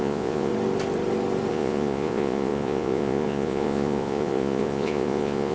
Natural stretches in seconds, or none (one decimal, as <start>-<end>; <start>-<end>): 0.5-1.5